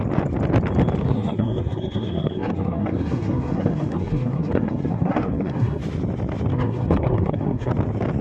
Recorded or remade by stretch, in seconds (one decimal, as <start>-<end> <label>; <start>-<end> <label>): 0.0-1.0 recorded; 1.0-5.8 remade; 5.8-6.5 recorded; 6.5-7.7 remade; 7.7-8.2 recorded